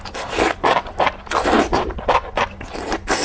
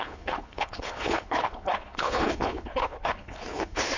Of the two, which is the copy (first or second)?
second